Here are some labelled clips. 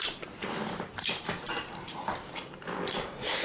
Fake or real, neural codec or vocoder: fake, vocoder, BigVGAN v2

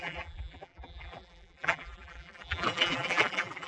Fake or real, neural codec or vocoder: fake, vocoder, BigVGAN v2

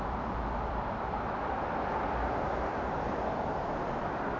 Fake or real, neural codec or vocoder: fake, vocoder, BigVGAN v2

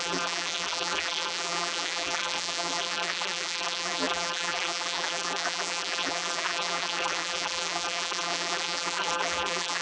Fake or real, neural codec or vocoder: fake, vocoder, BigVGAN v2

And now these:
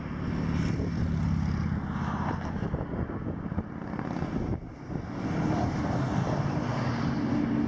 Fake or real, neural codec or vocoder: real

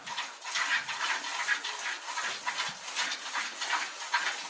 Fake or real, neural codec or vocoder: real